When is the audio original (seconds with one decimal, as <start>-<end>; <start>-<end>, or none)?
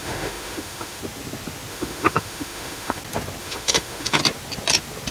1.0-1.7; 3.0-3.4; 4.2-5.1